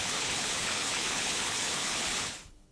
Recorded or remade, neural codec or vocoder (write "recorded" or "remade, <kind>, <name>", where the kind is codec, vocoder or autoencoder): remade, codec, HILCodec